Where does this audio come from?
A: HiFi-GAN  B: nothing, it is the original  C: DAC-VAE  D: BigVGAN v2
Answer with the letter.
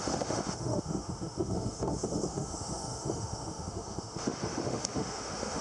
C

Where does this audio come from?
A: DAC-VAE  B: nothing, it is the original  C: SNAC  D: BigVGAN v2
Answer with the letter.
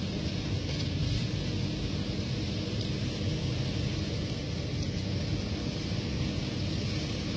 B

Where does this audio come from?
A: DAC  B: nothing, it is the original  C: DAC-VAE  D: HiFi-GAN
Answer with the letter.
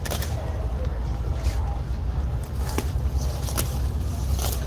B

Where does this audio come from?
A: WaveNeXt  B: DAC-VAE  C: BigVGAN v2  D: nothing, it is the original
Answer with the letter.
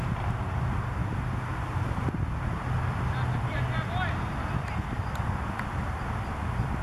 D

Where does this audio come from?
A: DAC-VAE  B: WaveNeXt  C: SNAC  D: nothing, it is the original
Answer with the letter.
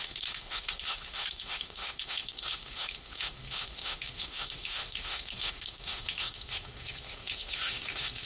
A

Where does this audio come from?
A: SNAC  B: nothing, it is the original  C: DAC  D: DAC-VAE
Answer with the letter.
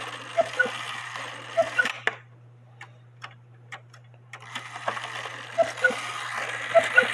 B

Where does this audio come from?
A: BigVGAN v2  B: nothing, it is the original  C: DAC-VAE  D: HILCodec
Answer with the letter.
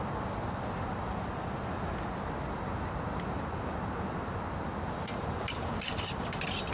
B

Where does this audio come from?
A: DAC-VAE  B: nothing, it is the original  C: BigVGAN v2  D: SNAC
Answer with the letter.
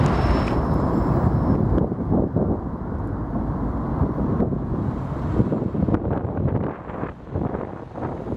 B